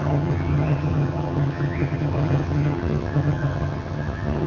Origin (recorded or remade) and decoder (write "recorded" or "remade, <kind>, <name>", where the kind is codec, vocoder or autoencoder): remade, vocoder, HiFi-GAN